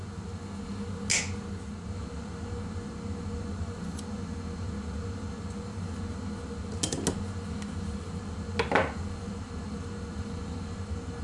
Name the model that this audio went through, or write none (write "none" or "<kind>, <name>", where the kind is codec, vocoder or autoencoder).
none